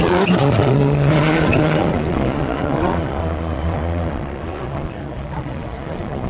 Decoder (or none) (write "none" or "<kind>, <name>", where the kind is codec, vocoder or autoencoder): vocoder, Vocos